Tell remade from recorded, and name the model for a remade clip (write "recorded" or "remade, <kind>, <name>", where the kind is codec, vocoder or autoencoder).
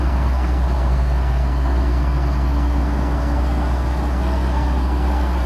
remade, codec, SNAC